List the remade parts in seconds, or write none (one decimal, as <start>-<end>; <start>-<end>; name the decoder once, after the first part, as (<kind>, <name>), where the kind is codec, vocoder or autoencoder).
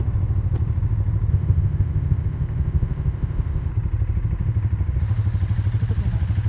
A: 1.3-3.7 (codec, ZipCodec)